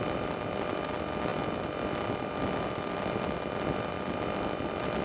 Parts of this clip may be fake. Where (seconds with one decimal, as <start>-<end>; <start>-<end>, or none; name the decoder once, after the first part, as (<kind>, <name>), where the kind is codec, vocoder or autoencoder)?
none